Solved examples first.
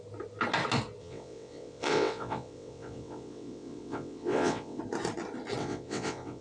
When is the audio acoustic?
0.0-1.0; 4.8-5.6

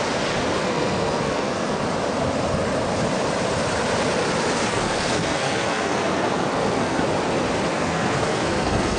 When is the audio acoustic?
0.0-0.6; 1.8-4.7; 7.0-7.7

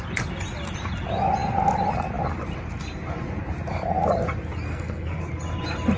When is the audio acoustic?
0.0-4.7; 5.2-6.0

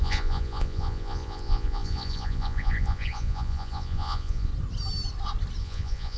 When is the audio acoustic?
4.5-5.6

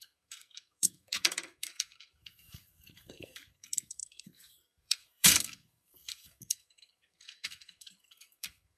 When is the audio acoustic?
none

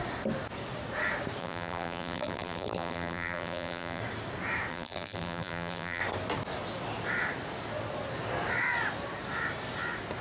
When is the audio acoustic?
0.0-1.4; 4.0-4.7; 6.0-10.2